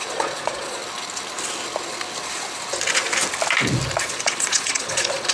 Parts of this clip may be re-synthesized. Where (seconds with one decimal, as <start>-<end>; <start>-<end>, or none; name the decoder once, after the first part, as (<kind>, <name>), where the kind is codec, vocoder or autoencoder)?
0.0-0.8 (vocoder, Vocos); 4.0-5.3